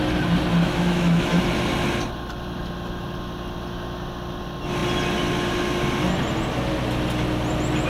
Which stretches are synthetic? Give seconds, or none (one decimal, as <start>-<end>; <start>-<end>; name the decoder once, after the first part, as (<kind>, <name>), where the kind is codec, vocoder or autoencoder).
0.6-1.4 (autoencoder, DAC-VAE)